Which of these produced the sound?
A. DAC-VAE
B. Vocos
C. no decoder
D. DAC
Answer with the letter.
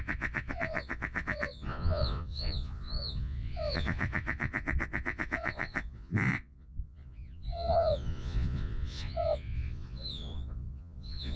B